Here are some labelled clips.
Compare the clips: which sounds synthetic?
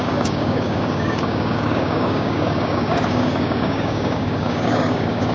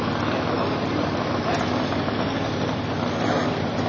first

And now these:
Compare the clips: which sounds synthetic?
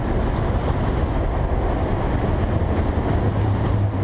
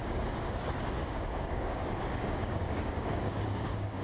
second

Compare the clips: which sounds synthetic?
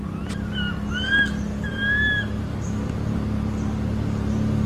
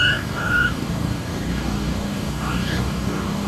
second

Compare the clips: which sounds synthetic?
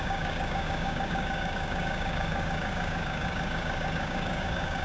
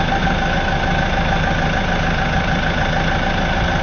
first